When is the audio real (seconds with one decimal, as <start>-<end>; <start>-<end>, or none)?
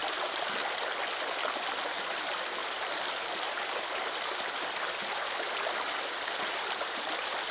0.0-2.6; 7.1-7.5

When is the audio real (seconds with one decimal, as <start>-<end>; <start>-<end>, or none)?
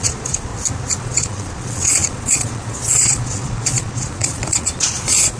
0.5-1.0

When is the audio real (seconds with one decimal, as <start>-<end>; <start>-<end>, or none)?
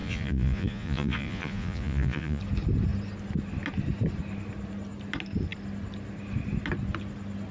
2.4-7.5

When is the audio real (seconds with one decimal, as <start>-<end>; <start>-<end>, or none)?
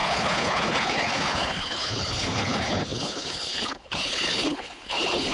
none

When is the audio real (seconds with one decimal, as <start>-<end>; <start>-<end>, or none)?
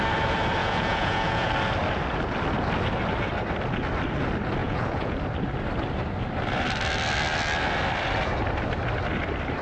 0.0-0.6; 1.5-4.6; 5.2-9.6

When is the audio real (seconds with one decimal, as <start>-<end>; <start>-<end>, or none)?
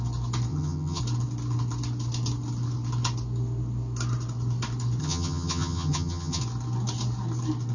0.0-0.5; 1.0-5.0; 6.4-7.7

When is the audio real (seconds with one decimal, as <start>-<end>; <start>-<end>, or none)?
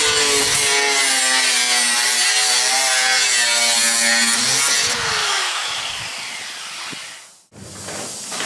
0.0-5.2; 5.8-8.4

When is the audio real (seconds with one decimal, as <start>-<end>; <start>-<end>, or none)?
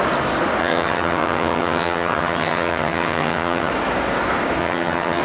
0.0-0.6; 3.7-4.6